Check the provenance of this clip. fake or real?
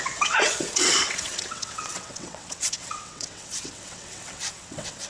fake